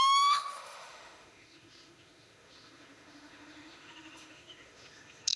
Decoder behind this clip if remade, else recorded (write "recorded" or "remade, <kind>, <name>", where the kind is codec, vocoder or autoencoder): remade, autoencoder, DAC-VAE